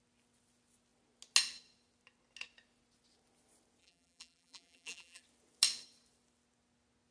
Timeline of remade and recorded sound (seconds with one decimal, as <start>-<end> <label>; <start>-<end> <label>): 0.0-3.8 recorded; 3.8-5.2 remade; 5.2-7.1 recorded